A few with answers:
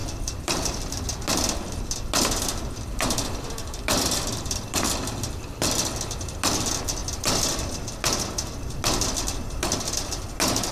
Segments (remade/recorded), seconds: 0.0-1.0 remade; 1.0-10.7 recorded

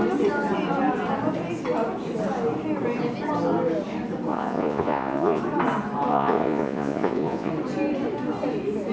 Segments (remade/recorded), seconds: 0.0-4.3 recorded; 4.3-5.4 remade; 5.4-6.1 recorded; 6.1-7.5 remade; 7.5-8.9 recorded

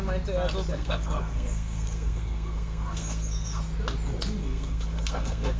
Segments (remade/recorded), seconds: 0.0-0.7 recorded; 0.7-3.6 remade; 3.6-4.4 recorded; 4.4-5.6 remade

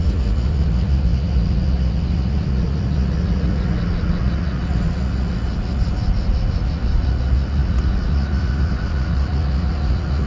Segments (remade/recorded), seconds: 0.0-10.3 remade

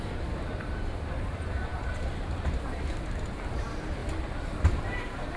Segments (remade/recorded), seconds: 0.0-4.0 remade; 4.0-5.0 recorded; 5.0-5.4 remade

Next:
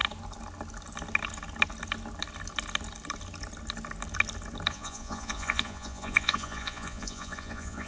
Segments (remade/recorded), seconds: 0.0-4.7 recorded; 4.7-7.9 remade

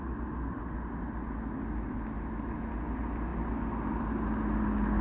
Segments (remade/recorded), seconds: 0.0-5.0 recorded